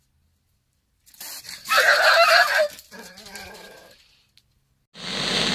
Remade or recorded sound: recorded